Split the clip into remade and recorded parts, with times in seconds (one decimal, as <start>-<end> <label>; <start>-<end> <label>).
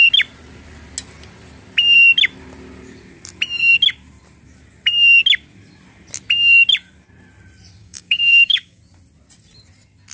0.0-7.8 recorded; 7.8-8.8 remade; 8.8-10.1 recorded